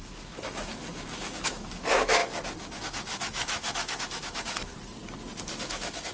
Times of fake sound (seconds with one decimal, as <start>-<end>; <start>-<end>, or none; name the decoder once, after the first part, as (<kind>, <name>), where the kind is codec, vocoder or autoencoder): 0.0-4.7 (autoencoder, DAC-VAE); 5.5-6.1